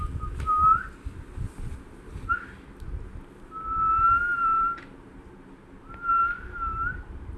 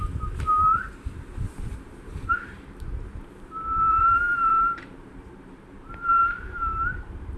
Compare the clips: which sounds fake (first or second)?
second